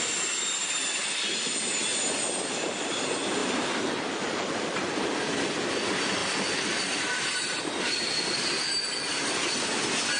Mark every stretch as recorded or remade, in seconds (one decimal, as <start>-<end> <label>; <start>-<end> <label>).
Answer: 0.0-3.4 recorded; 3.4-5.0 remade; 5.0-6.2 recorded; 6.2-7.6 remade; 7.6-10.2 recorded